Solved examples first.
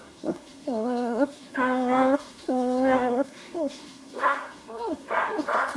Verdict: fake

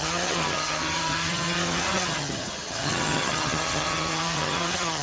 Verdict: fake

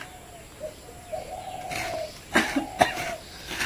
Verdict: real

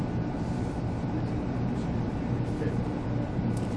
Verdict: fake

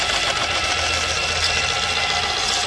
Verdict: real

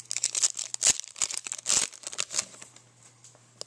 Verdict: real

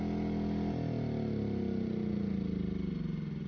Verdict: real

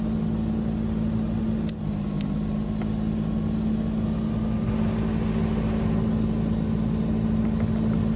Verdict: real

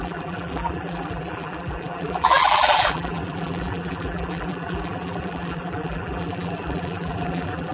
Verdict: fake